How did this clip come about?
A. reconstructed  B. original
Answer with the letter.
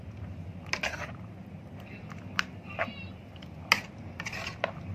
B